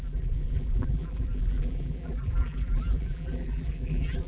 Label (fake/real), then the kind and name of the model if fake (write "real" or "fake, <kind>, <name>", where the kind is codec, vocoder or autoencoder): fake, vocoder, BigVGAN v2